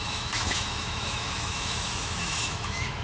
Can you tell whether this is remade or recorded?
remade